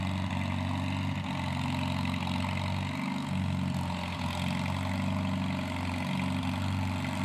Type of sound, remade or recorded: recorded